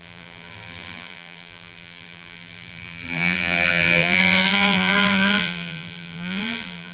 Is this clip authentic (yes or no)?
no